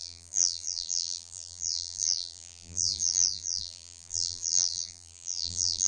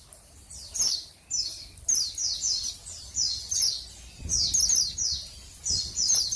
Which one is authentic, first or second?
second